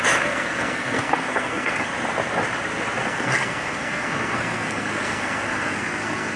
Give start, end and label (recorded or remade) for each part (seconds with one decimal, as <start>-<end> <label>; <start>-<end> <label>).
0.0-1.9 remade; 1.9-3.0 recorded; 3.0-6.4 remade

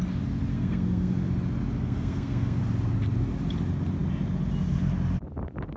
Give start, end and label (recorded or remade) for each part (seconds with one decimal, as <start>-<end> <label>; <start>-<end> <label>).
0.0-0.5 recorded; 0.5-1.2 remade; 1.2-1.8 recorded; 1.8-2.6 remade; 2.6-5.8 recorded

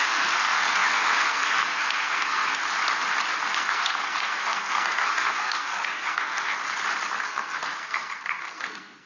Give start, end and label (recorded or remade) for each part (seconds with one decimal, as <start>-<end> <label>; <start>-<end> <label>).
0.0-2.6 remade; 2.6-3.5 recorded; 3.5-6.5 remade; 6.5-7.2 recorded; 7.2-9.1 remade

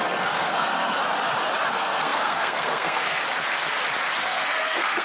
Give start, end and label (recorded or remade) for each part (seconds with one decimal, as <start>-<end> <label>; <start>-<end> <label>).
0.0-1.0 remade; 1.0-1.6 recorded; 1.6-3.2 remade; 3.2-4.2 recorded; 4.2-5.0 remade

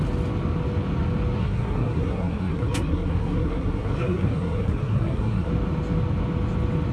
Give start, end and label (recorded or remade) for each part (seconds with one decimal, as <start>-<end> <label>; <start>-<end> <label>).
0.0-1.4 recorded; 1.4-5.5 remade; 5.5-6.9 recorded

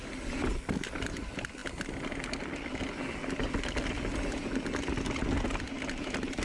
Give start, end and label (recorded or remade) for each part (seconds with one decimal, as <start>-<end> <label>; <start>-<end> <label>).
0.0-6.4 recorded

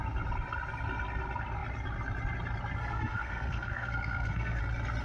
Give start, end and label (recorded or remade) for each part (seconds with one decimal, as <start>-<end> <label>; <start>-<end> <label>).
0.0-2.8 recorded; 2.8-4.6 remade; 4.6-5.0 recorded

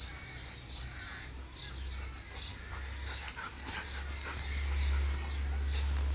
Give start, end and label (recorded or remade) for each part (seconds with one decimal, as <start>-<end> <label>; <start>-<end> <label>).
0.0-6.1 recorded